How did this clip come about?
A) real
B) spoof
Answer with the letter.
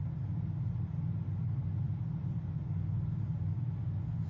A